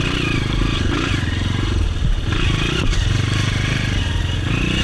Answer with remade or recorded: recorded